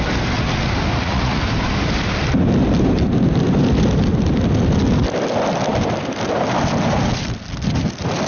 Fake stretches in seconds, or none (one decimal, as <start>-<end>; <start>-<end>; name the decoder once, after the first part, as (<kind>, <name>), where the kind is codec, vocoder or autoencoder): 0.9-1.4 (vocoder, Vocos)